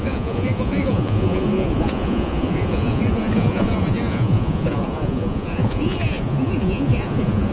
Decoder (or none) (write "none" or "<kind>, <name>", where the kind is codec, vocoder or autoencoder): vocoder, Vocos